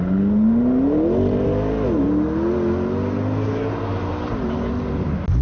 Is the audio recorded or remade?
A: recorded